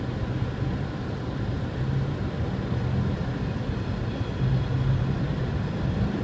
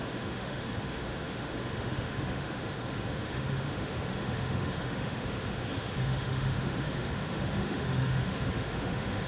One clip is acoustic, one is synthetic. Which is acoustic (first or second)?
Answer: first